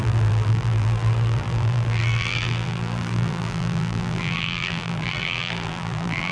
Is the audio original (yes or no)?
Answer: no